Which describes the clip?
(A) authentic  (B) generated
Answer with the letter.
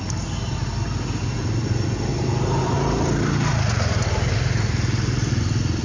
A